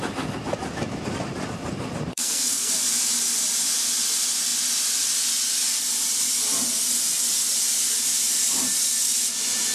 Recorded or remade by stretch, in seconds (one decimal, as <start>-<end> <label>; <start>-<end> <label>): 0.0-2.1 recorded; 2.1-2.7 remade; 2.7-9.7 recorded